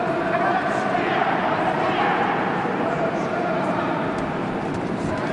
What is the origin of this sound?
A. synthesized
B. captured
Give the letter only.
A